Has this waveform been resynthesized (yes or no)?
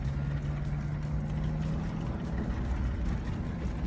no